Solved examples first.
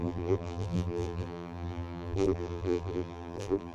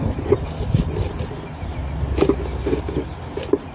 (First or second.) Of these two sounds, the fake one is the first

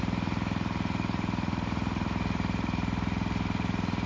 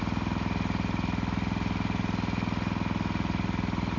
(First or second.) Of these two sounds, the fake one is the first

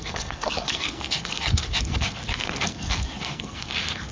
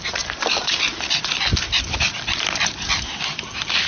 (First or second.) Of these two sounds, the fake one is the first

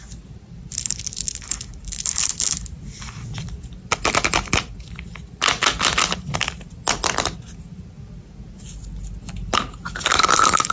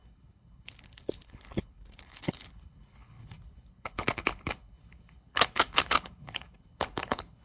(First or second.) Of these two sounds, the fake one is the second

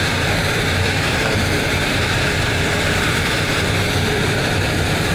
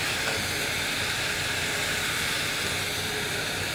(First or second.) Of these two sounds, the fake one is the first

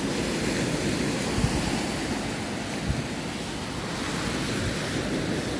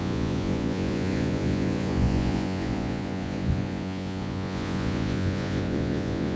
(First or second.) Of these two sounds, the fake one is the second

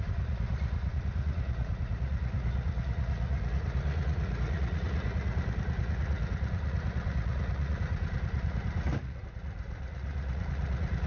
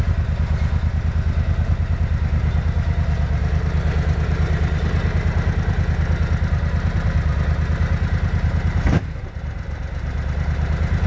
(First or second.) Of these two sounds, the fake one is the first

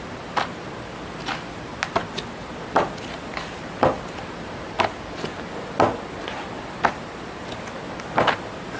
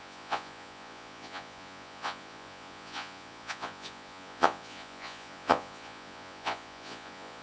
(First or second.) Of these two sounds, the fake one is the second